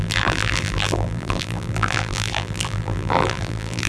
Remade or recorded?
remade